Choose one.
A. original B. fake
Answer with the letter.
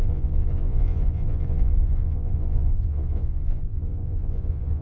B